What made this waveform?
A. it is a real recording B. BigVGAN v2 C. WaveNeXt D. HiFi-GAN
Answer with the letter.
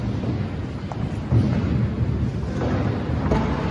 A